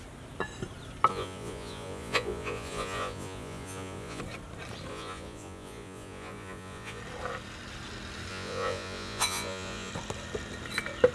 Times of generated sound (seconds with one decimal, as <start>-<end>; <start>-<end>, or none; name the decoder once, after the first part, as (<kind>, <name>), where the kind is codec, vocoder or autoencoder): 1.1-4.2 (vocoder, Vocos); 4.9-7.0; 8.3-9.9

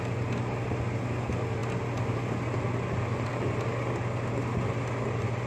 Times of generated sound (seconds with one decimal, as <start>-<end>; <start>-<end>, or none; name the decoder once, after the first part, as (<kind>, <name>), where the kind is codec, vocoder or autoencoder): none